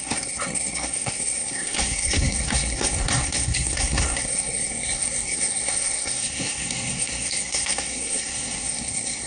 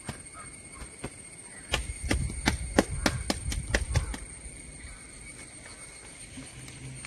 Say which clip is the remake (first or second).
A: first